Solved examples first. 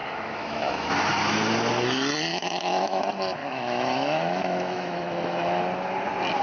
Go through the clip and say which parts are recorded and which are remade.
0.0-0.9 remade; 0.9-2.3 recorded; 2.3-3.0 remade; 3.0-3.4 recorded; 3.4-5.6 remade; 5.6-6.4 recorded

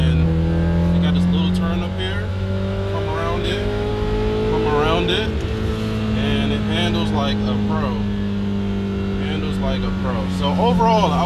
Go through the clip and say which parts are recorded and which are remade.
0.0-2.3 recorded; 2.3-3.9 remade; 3.9-10.0 recorded; 10.0-10.8 remade; 10.8-11.3 recorded